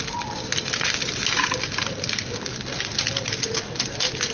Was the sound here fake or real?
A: real